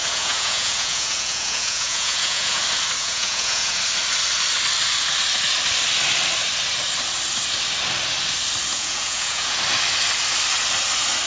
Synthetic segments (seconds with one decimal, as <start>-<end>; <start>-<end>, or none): 0.0-2.6; 3.0-3.8; 8.7-9.6